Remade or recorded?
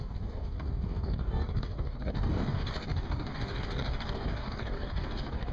remade